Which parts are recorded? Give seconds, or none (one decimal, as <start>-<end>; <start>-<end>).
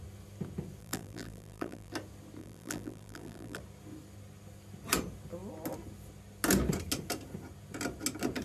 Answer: 0.0-0.8; 1.9-2.4; 3.6-8.4